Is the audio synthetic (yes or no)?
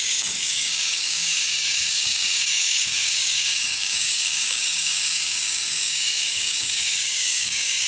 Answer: yes